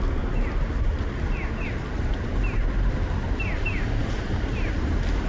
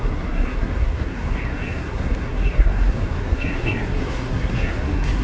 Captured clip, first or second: first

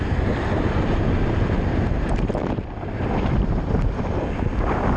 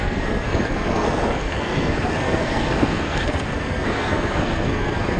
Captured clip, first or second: first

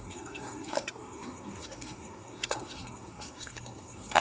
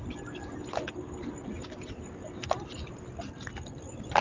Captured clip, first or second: second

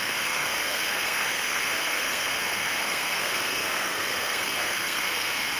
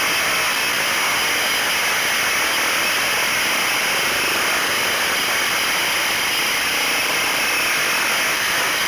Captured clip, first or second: second